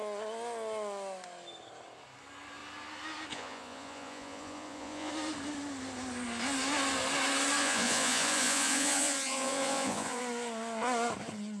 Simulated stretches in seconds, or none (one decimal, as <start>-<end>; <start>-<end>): 3.3-5.1; 7.6-10.2